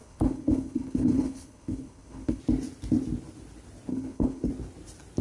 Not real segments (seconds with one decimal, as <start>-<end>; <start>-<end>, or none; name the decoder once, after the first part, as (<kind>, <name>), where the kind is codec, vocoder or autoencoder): 0.0-2.4 (codec, HILCodec); 3.9-4.5